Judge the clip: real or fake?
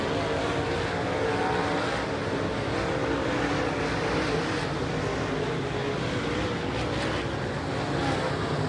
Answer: real